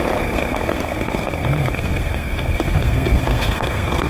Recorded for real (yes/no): no